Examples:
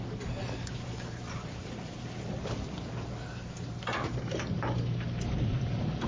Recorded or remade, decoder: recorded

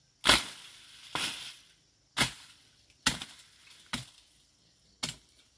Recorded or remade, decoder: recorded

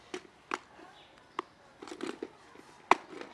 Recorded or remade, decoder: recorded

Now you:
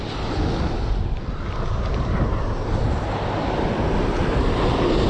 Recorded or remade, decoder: recorded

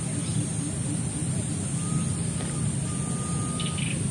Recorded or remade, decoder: recorded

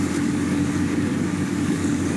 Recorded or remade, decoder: remade, codec, DAC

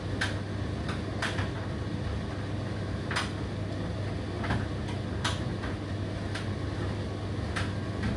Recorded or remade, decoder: recorded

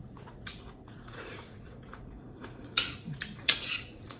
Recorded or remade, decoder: remade, vocoder, Vocos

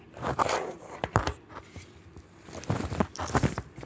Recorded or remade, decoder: remade, vocoder, BigVGAN v2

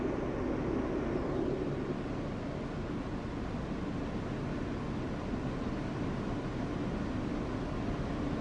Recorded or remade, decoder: recorded